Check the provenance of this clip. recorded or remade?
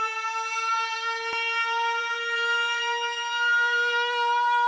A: remade